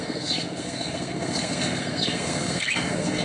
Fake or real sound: fake